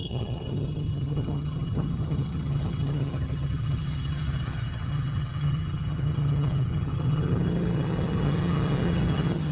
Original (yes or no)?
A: no